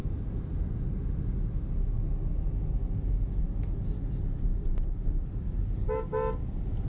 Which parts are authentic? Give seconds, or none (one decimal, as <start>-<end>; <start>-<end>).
0.0-6.9